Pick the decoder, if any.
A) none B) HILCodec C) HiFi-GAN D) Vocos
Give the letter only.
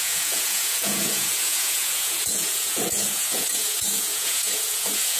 D